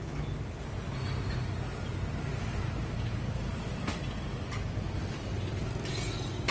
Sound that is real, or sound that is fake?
real